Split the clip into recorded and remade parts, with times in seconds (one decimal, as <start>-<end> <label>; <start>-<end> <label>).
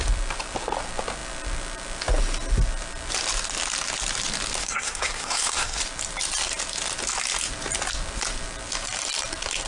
0.0-4.6 recorded; 4.6-5.8 remade; 5.8-9.7 recorded